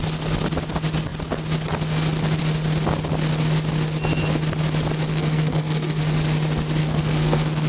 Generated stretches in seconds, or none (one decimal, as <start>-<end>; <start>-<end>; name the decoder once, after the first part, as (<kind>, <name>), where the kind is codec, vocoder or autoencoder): 5.1-6.0 (codec, SNAC); 6.8-7.7